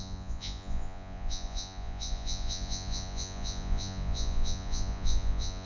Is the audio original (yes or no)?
no